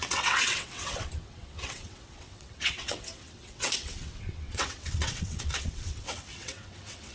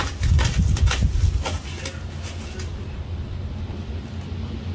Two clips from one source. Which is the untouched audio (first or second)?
second